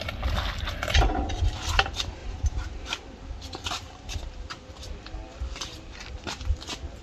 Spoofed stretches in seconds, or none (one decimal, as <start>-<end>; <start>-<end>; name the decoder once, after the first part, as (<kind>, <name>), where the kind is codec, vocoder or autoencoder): 2.2-6.4 (vocoder, BigVGAN v2)